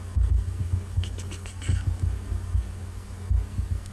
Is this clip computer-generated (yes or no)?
yes